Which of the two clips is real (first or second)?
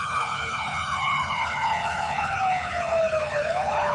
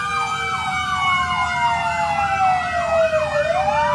second